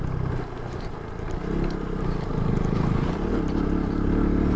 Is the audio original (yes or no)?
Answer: yes